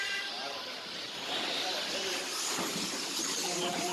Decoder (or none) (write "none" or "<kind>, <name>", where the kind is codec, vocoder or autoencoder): vocoder, BigVGAN v2